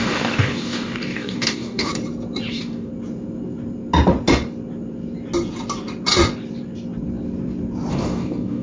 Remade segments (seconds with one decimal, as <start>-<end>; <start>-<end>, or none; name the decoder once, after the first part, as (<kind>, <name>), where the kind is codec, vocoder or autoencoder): 0.0-1.9 (codec, DAC); 2.5-2.9; 7.9-8.6